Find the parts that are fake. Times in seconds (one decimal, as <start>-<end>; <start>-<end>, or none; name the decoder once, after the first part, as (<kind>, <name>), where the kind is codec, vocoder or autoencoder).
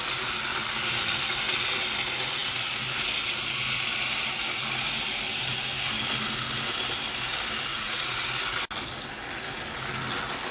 7.7-8.2 (vocoder, Vocos)